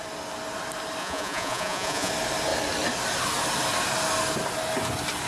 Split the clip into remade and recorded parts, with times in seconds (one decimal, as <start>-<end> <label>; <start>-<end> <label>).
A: 0.0-1.0 recorded; 1.0-2.1 remade; 2.1-5.3 recorded